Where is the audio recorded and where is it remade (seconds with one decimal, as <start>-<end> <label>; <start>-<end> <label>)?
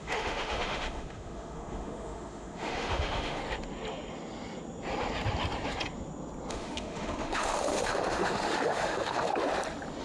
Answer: 0.0-3.4 remade; 3.4-6.5 recorded; 6.5-9.3 remade; 9.3-10.0 recorded